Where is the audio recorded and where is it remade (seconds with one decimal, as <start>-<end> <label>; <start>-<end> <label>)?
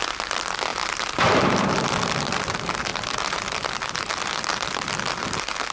0.0-5.7 recorded